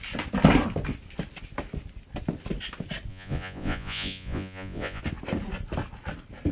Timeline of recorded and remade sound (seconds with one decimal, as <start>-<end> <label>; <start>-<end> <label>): 0.0-3.1 recorded; 3.1-5.0 remade; 5.0-6.5 recorded